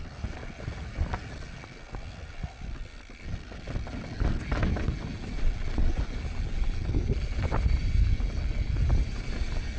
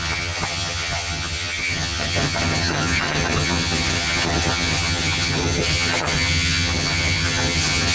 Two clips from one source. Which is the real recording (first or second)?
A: first